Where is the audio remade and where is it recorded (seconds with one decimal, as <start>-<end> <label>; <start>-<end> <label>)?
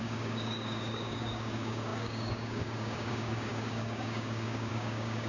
0.0-5.3 remade